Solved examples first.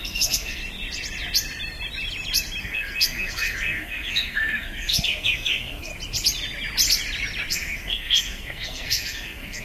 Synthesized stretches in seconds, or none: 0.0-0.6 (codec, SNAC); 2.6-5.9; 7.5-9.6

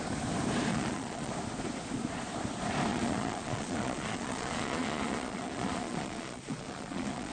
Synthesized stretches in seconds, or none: 0.7-1.3 (vocoder, Vocos); 2.9-7.3

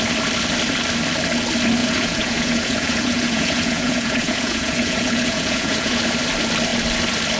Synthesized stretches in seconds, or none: 1.8-6.0 (vocoder, Vocos)

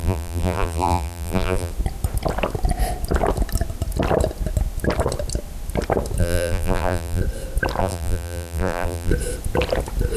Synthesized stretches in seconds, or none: 0.0-1.7 (vocoder, BigVGAN v2); 6.2-7.2; 7.8-9.1

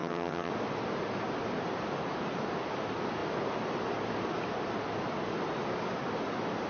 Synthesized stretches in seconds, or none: 0.0-0.5 (vocoder, HiFi-GAN)

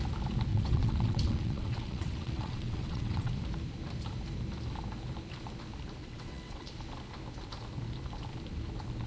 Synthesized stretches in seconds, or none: 0.5-3.3 (vocoder, WaveNeXt); 6.0-6.7

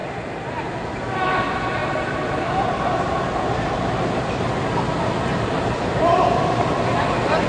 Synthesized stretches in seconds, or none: 0.0-1.0 (vocoder, BigVGAN v2); 1.8-4.4; 4.9-6.4

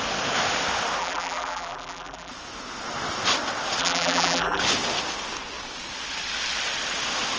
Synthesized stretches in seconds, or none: 1.0-2.3 (vocoder, BigVGAN v2); 3.8-4.6